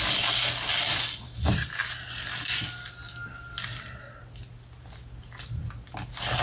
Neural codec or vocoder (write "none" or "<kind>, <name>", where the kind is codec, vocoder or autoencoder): none